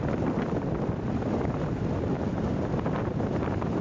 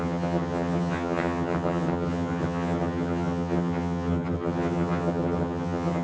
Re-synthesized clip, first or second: second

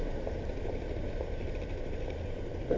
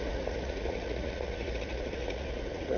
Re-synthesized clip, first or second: second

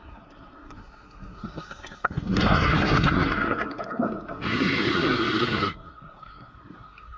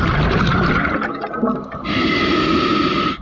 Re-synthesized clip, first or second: first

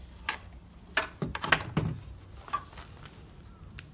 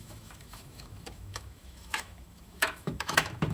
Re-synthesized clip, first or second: second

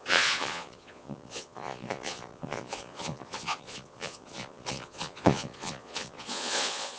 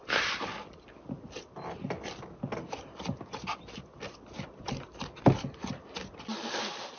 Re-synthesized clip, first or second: first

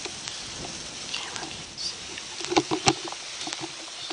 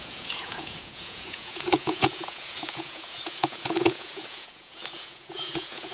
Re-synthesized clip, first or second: second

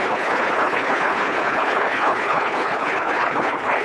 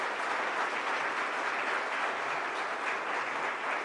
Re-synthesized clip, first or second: first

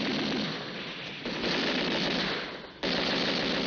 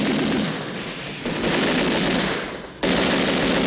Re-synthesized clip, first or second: first